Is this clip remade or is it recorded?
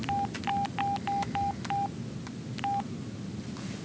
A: recorded